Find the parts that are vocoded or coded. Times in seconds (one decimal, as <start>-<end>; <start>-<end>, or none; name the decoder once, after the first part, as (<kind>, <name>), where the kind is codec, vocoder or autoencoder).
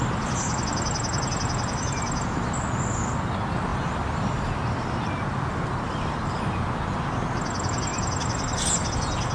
none